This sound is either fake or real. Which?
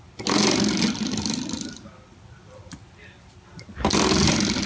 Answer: real